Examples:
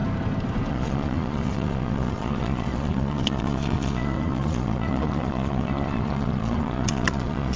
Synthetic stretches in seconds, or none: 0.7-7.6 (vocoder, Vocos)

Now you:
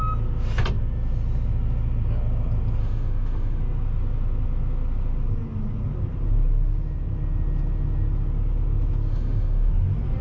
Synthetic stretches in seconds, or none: 2.8-3.6 (autoencoder, DAC-VAE); 9.1-9.7

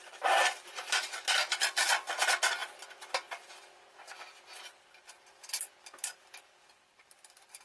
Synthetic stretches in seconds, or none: none